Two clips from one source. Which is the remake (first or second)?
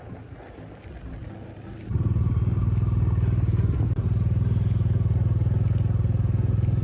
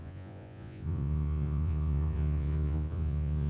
second